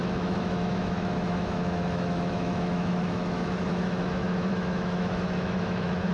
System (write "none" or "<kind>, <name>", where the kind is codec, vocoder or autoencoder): autoencoder, DAC-VAE